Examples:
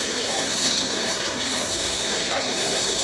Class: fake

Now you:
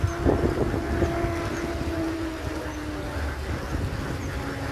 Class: real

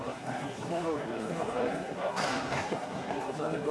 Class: fake